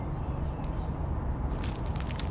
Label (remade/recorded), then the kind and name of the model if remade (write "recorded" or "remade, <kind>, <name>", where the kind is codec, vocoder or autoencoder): recorded